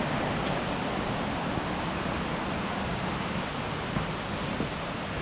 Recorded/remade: recorded